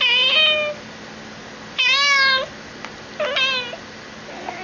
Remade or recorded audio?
recorded